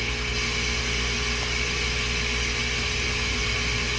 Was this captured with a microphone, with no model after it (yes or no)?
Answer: yes